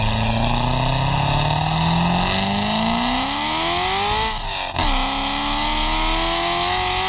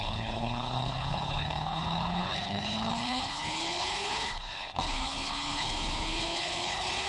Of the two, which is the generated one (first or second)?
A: second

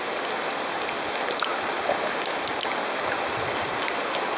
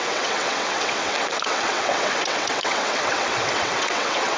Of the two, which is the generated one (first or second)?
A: second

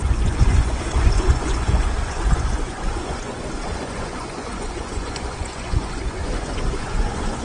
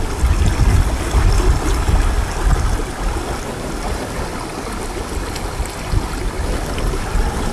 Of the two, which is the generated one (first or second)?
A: first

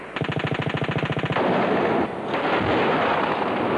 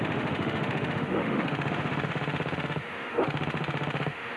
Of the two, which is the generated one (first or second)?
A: second